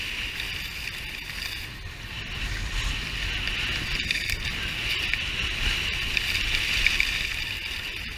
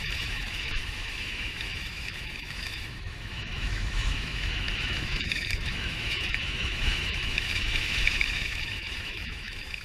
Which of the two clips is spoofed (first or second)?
second